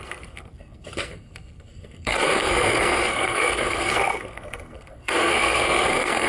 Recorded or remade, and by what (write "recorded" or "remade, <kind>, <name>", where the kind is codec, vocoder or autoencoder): remade, codec, SNAC